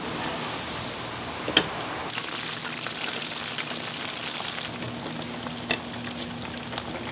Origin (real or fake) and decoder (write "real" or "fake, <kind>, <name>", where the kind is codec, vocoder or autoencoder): real